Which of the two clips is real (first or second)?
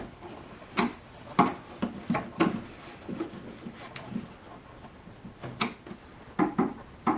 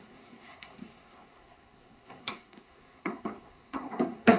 first